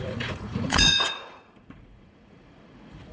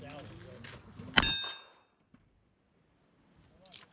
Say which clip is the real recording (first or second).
second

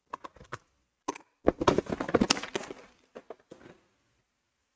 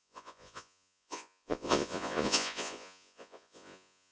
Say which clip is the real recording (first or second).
first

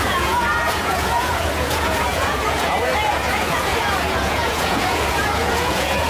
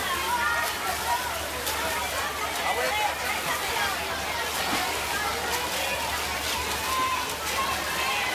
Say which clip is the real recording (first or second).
second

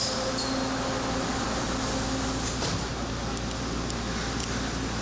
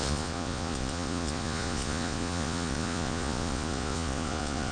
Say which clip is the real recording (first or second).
first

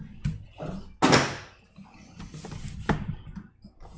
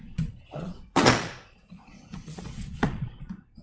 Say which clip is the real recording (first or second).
first